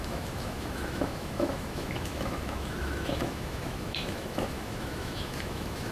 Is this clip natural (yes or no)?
no